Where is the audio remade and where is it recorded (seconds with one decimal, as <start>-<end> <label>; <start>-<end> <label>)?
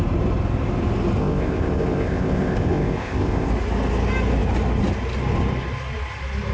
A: 0.0-1.2 recorded; 1.2-3.5 remade; 3.5-6.5 recorded